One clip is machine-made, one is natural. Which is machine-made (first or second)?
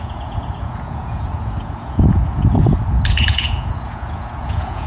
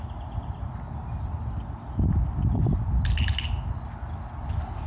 first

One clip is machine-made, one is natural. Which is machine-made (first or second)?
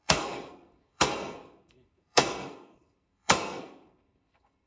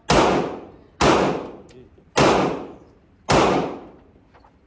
first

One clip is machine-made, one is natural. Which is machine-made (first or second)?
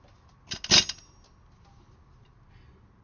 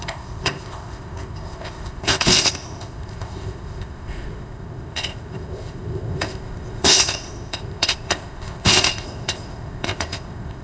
second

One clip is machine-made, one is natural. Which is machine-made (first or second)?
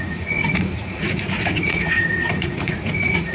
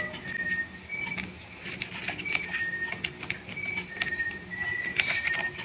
first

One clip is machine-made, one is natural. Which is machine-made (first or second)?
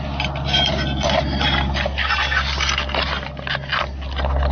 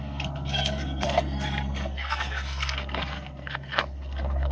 second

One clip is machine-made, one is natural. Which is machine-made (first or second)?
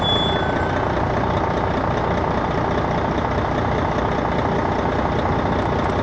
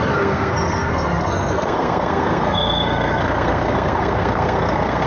second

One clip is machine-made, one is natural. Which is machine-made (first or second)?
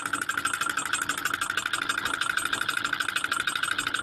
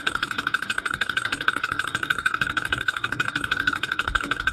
second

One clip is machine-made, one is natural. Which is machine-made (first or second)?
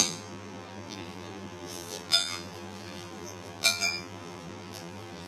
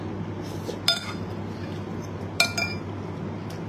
first